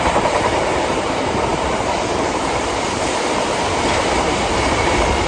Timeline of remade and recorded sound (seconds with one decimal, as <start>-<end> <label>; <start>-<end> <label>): 0.0-5.3 remade

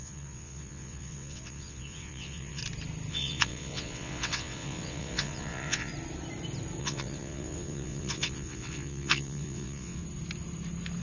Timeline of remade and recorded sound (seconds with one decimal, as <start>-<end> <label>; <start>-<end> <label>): 0.0-2.6 remade; 2.6-3.1 recorded; 3.1-5.9 remade; 5.9-6.8 recorded; 6.8-10.0 remade; 10.0-11.0 recorded

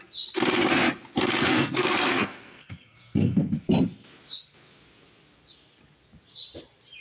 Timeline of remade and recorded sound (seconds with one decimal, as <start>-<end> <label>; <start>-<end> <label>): 0.0-1.4 recorded; 1.4-3.6 remade; 3.6-7.0 recorded

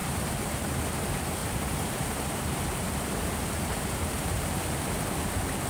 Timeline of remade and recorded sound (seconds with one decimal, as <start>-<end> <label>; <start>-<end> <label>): 0.0-0.8 remade; 0.8-1.4 recorded; 1.4-4.8 remade; 4.8-5.7 recorded

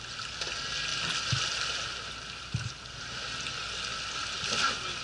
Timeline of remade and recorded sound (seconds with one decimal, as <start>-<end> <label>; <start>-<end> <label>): 0.0-5.0 recorded

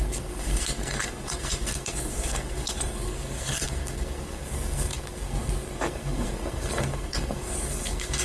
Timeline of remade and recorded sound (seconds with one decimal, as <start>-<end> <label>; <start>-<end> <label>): 0.0-8.2 remade